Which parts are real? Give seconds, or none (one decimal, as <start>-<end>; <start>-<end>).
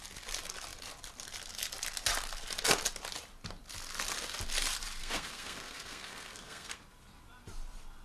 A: 0.0-5.0; 6.8-8.0